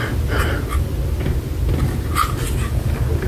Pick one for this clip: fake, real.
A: real